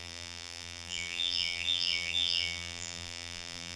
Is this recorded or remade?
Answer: remade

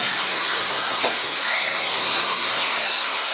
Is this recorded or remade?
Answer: remade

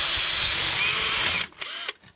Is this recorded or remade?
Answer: recorded